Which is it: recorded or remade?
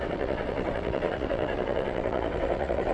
remade